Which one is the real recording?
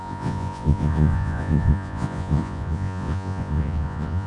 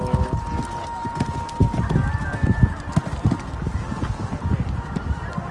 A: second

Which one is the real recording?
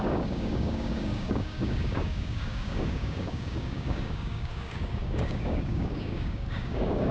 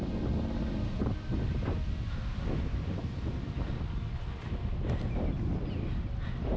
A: second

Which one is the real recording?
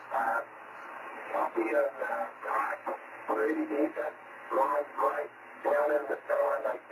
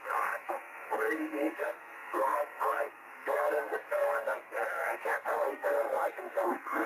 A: first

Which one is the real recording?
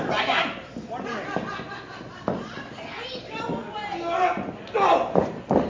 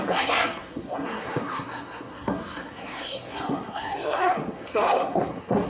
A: first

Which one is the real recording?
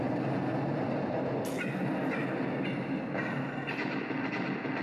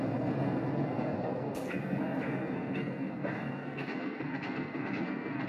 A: first